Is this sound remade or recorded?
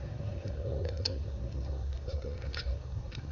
remade